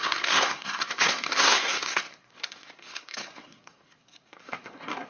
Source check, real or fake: fake